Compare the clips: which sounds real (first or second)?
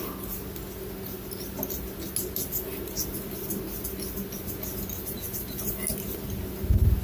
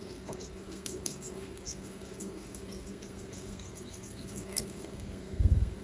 first